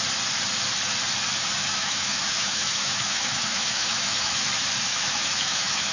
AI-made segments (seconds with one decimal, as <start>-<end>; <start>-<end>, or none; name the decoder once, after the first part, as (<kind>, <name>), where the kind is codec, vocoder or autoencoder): 1.6-4.5 (autoencoder, DAC-VAE); 4.9-5.9